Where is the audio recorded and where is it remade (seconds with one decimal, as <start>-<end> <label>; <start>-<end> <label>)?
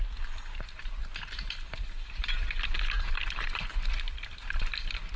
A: 0.0-5.2 recorded